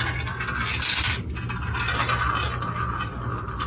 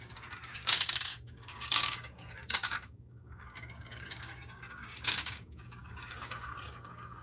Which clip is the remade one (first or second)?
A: second